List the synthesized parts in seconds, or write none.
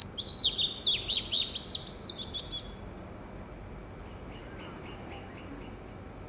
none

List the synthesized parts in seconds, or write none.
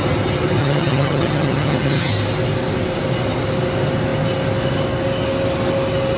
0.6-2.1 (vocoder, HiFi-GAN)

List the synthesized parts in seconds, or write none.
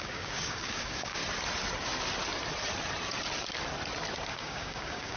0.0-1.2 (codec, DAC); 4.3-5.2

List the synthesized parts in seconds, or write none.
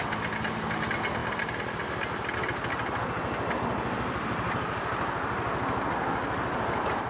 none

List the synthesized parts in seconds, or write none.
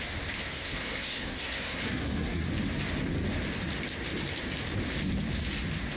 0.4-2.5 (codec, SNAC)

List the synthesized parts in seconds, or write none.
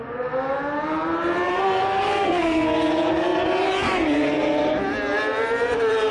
1.5-2.9 (codec, SNAC)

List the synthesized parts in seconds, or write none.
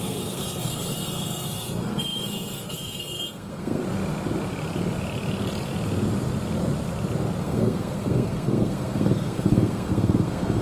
0.0-3.8 (codec, SNAC); 7.4-10.6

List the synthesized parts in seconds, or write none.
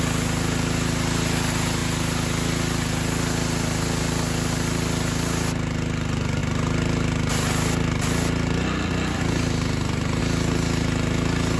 none